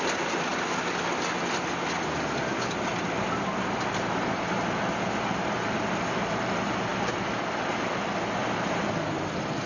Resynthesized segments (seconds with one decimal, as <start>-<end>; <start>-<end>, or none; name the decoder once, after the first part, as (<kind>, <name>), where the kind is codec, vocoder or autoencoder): none